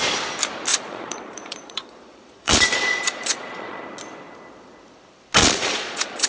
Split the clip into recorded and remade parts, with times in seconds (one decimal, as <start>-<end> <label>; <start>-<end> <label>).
0.0-0.7 recorded; 0.7-3.8 remade; 3.8-5.4 recorded; 5.4-6.3 remade